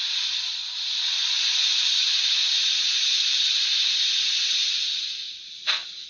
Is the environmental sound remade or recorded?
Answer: recorded